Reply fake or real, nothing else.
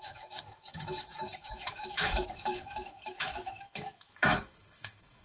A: fake